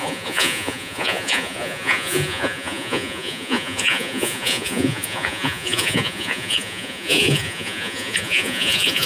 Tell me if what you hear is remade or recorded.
remade